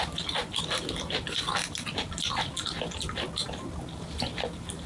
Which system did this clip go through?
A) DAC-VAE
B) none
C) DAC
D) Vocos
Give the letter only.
B